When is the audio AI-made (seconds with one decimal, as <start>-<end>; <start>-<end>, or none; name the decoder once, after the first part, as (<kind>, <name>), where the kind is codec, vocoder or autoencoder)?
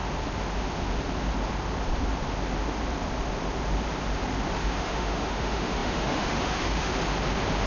4.6-6.9 (autoencoder, DAC-VAE)